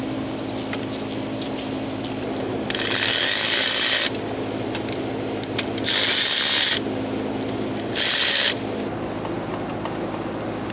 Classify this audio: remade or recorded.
recorded